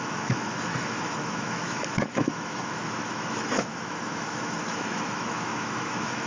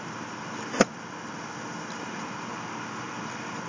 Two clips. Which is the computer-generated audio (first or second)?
first